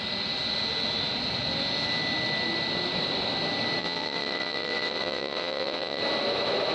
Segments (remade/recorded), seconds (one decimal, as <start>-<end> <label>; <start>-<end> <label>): 0.0-3.8 recorded; 3.8-6.0 remade; 6.0-6.7 recorded